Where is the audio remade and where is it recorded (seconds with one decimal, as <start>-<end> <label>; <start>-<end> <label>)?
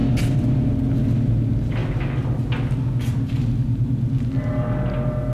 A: 0.0-5.3 recorded